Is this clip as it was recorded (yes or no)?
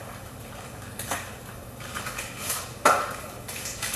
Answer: no